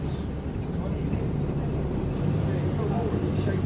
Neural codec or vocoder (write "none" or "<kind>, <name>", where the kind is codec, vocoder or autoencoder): none